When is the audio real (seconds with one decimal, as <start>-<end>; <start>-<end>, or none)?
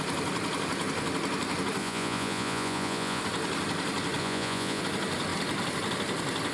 0.0-1.8; 3.2-4.2; 4.8-6.5